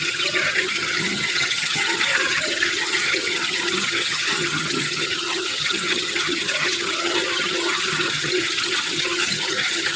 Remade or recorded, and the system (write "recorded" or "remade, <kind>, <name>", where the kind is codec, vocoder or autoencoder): remade, vocoder, HiFi-GAN